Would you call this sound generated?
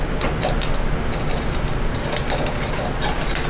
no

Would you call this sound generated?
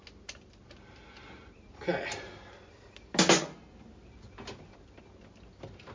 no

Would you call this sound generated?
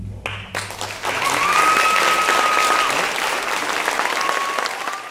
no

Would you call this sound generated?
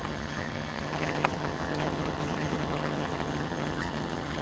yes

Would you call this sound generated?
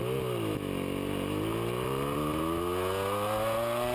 no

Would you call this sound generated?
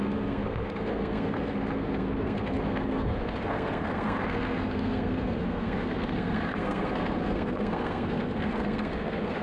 yes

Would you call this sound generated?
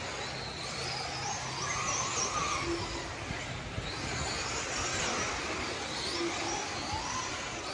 no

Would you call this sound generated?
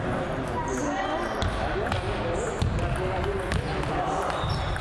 no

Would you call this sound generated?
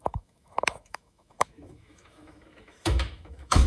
yes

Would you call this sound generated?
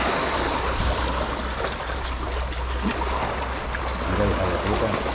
no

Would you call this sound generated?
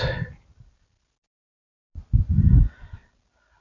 no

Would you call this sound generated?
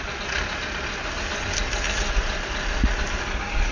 no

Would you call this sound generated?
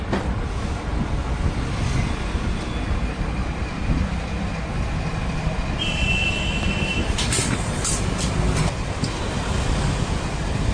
no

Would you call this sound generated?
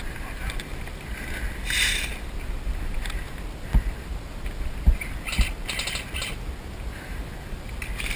no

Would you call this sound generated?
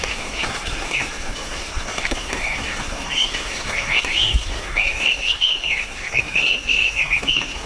yes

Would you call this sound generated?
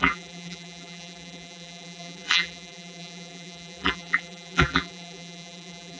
yes